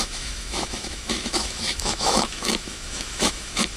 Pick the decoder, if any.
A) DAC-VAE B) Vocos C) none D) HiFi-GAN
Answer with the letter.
A